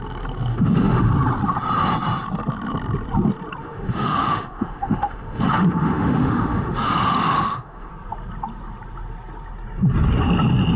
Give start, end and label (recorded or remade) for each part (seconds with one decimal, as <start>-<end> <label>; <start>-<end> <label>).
0.0-0.5 recorded; 0.5-1.1 remade; 1.1-3.6 recorded; 3.6-7.9 remade; 7.9-10.8 recorded